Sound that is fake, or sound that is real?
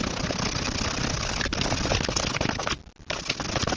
real